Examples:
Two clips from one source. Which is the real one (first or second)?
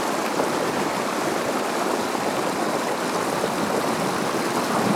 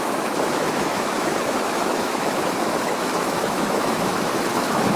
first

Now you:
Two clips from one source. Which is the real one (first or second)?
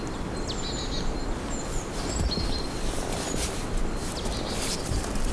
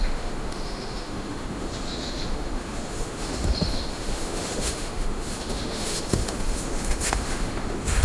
first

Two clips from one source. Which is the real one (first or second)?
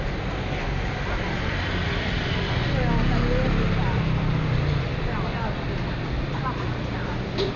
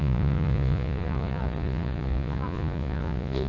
first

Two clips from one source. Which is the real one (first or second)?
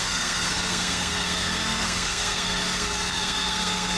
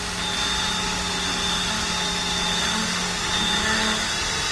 second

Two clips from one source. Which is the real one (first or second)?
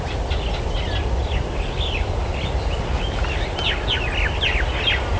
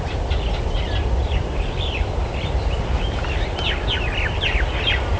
first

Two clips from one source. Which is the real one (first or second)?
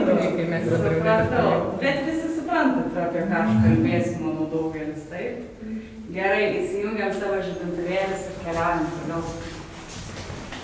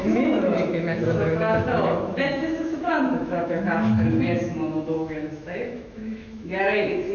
first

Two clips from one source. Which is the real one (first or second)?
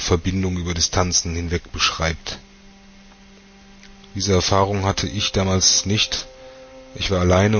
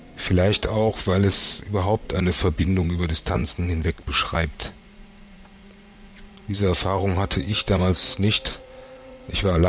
first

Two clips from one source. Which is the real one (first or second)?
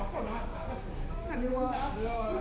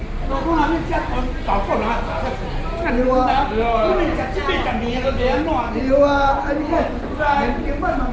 second